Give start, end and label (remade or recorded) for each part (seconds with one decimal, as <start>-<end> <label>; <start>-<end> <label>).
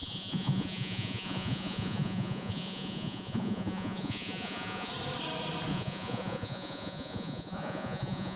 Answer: 0.0-4.9 remade; 4.9-5.7 recorded; 5.7-8.4 remade